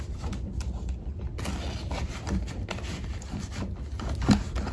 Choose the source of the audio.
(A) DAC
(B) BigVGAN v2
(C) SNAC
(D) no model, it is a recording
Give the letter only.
D